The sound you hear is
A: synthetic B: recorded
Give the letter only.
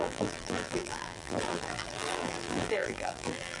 A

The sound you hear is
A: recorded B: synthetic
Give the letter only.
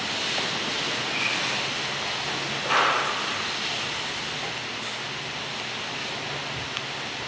A